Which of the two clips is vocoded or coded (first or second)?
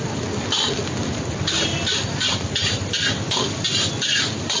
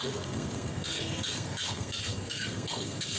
second